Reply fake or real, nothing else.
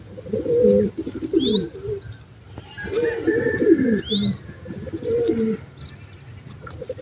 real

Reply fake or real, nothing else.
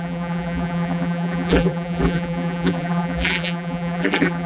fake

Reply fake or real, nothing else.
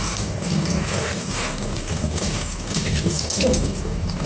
fake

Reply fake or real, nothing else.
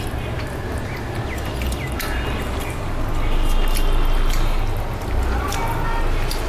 real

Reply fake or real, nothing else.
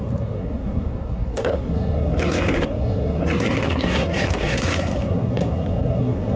fake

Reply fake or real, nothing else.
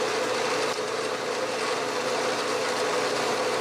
real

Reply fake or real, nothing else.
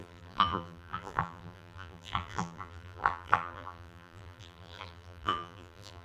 fake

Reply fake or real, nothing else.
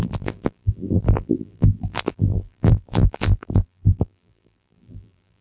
fake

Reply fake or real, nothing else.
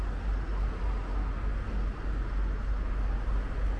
real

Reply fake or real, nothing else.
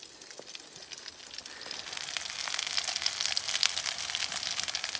real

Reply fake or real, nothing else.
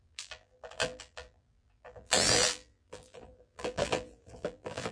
fake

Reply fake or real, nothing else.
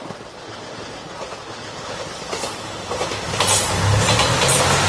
real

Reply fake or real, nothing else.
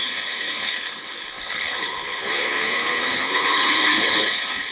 fake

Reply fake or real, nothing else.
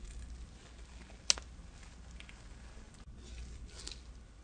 real